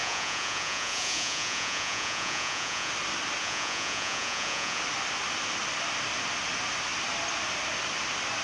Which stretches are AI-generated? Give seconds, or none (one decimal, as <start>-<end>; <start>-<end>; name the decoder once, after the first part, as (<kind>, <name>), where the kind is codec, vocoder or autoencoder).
0.0-2.9 (vocoder, Vocos); 3.4-4.8